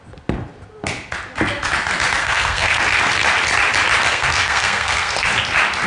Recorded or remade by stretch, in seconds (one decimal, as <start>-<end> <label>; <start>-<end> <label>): 0.0-2.2 recorded; 2.2-2.8 remade; 2.8-4.1 recorded; 4.1-5.3 remade; 5.3-5.9 recorded